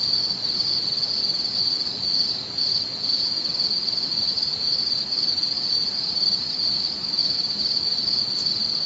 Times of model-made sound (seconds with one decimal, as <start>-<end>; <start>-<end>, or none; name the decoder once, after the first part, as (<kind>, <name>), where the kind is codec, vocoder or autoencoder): 7.2-7.8 (vocoder, BigVGAN v2)